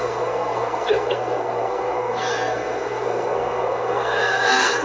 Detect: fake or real fake